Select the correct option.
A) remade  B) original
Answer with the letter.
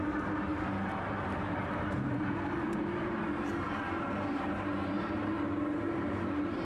A